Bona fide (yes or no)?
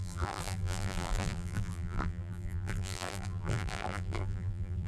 no